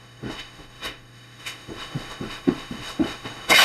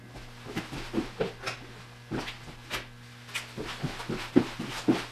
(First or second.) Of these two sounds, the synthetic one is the first